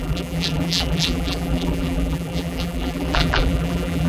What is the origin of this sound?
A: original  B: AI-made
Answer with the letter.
B